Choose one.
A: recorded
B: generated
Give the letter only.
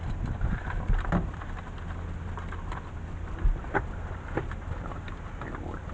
A